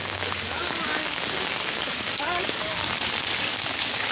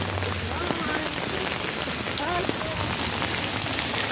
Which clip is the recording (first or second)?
second